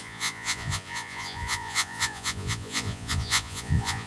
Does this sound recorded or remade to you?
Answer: remade